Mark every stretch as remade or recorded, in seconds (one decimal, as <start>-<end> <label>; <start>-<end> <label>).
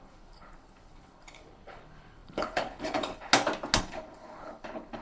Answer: 0.0-3.3 remade; 3.3-3.8 recorded; 3.8-5.0 remade